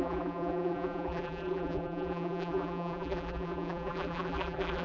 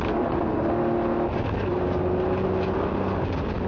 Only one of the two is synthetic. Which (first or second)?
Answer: first